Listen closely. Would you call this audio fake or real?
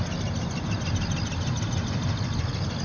real